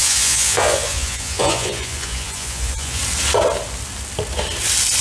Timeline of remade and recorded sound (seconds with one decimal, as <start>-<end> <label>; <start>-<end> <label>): 0.0-3.0 remade; 3.0-5.0 recorded